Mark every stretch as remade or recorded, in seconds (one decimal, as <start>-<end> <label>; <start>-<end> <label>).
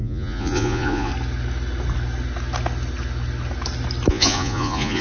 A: 0.0-1.1 remade; 1.1-4.1 recorded; 4.1-5.0 remade